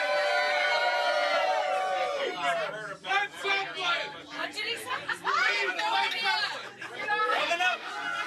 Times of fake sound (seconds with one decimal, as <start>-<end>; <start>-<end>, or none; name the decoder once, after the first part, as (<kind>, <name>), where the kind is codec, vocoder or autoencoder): 7.2-7.9 (codec, SNAC)